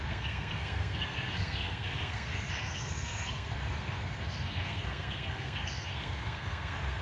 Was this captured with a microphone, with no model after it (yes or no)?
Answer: no